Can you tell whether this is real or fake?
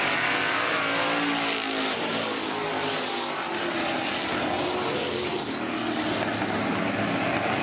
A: real